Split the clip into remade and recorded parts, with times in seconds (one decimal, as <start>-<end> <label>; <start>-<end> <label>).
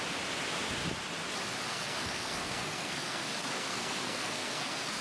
0.0-1.7 recorded; 1.7-5.0 remade